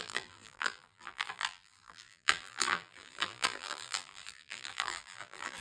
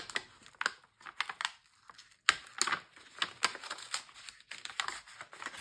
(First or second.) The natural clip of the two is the second